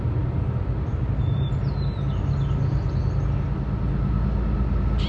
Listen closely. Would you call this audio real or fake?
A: real